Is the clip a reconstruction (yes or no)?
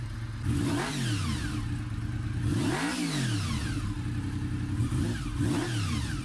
no